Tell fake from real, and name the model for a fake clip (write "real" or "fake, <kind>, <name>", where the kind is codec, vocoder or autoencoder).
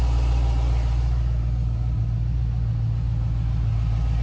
real